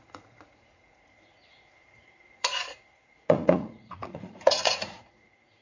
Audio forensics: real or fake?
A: fake